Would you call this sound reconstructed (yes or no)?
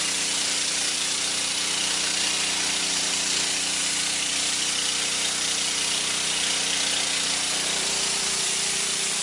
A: yes